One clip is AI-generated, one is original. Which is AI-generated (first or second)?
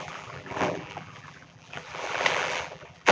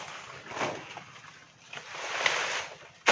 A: first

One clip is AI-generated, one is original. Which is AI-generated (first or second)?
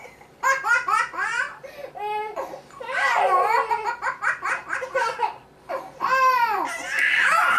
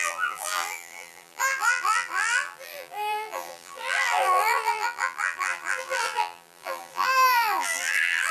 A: second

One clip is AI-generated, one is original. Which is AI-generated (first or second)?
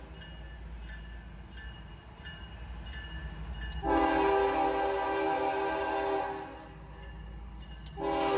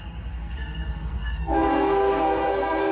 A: second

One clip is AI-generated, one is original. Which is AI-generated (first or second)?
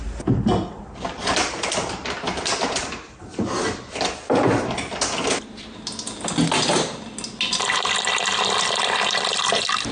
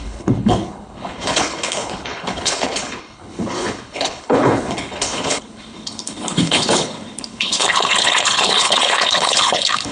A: second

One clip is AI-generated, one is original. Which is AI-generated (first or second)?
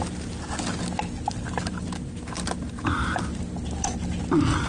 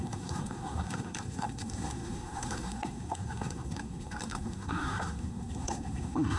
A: second